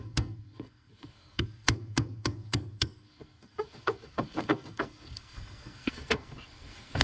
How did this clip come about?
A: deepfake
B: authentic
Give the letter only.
A